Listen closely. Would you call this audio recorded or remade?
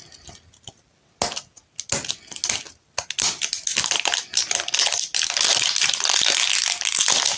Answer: recorded